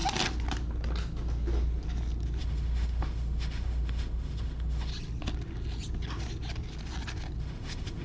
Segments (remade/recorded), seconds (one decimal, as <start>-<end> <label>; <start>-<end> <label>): 0.0-2.4 recorded; 2.4-4.9 remade; 4.9-7.4 recorded; 7.4-8.0 remade